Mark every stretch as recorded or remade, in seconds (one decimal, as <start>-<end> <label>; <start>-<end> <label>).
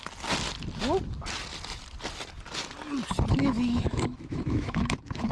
0.0-3.4 recorded; 3.4-5.3 remade